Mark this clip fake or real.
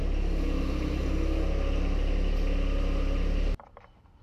real